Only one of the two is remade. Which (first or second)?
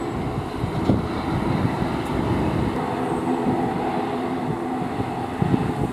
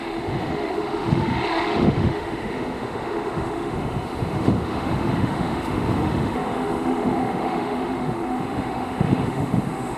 second